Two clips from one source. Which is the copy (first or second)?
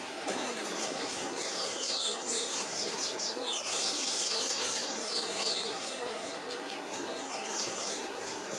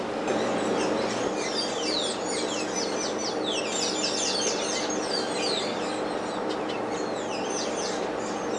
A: first